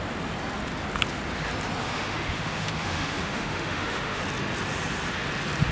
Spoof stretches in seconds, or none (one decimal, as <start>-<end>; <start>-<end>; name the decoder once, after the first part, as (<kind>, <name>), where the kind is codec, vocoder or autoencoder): 1.8-4.2 (autoencoder, DAC-VAE)